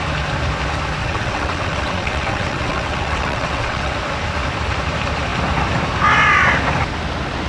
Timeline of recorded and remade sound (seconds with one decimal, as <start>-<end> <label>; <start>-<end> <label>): 0.0-1.0 recorded; 1.0-3.9 remade; 3.9-7.5 recorded